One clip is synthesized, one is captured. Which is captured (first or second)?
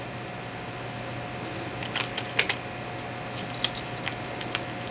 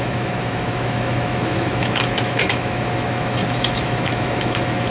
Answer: first